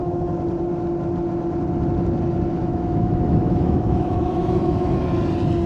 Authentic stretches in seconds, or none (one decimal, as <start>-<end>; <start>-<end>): 0.0-2.6; 4.9-5.7